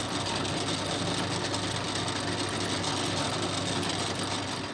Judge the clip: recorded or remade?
recorded